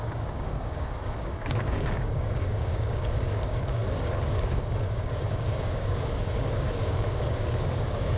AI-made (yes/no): yes